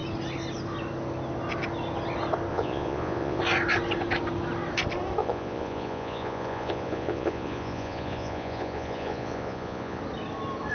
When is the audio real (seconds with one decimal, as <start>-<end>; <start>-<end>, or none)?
0.0-2.5; 3.4-5.2; 10.0-10.7